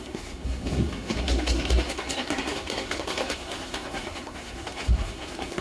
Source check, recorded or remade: remade